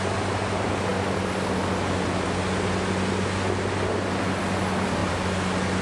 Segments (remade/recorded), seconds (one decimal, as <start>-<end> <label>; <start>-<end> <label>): 0.0-5.8 recorded